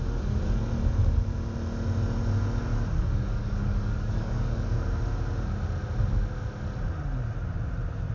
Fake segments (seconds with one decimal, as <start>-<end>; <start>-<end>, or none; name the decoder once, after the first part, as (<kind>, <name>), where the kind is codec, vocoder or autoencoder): 2.7-4.6 (codec, DAC)